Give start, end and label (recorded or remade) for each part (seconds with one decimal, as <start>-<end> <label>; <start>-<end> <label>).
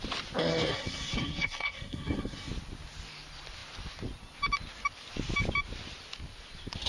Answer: 0.0-0.5 recorded; 0.5-2.5 remade; 2.5-6.9 recorded